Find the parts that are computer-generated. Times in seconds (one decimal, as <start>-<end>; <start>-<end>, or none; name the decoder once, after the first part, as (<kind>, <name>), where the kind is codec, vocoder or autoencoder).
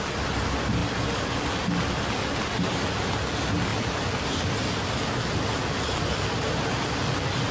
none